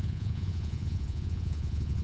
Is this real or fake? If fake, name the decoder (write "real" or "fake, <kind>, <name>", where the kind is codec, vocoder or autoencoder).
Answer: fake, vocoder, Vocos